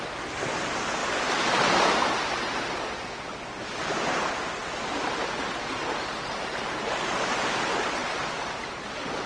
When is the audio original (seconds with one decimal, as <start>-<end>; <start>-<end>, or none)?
0.0-9.3